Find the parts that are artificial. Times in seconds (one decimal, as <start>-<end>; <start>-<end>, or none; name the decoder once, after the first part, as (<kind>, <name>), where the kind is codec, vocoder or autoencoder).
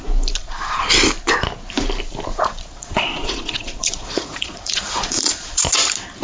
0.4-0.9 (vocoder, Vocos); 2.3-5.6